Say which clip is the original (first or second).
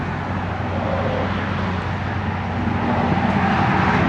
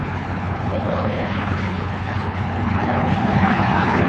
first